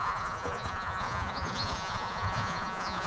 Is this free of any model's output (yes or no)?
no